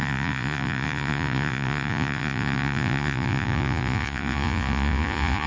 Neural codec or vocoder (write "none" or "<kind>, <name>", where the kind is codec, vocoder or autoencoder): vocoder, Vocos